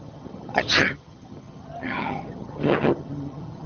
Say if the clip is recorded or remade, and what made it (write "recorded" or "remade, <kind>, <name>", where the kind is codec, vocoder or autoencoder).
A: remade, vocoder, HiFi-GAN